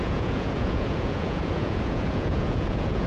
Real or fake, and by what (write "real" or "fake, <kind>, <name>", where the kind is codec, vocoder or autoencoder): fake, vocoder, Vocos